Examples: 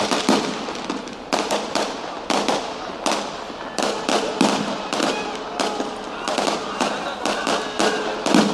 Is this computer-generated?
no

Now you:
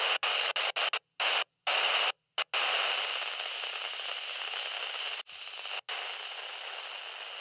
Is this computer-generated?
no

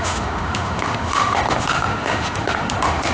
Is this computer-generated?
yes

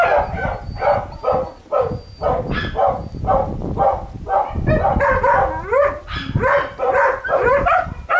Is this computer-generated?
no